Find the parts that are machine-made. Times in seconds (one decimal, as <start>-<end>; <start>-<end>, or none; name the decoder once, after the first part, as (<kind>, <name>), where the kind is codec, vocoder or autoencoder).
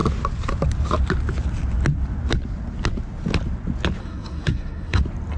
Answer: 4.0-5.0 (codec, SNAC)